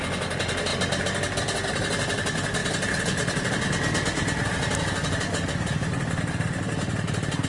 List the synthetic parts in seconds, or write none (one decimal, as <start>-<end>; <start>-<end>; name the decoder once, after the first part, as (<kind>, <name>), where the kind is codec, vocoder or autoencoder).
none